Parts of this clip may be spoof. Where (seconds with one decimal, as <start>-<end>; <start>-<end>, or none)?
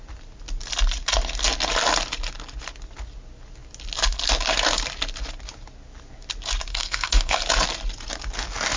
6.7-7.4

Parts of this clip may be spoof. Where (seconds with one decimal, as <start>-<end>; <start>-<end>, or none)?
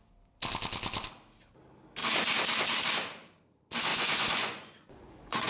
3.9-5.5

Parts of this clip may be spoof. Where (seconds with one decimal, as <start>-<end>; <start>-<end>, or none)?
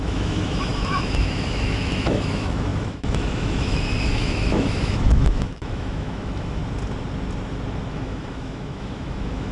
0.0-6.6; 7.9-9.5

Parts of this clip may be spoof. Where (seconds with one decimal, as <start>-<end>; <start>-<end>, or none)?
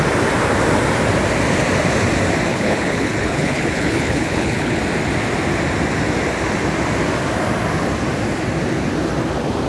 2.5-4.8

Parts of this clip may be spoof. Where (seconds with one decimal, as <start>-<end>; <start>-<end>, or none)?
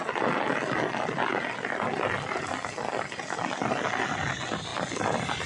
none